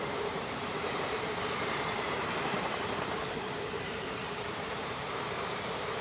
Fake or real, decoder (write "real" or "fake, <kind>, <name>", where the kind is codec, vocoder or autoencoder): fake, vocoder, BigVGAN v2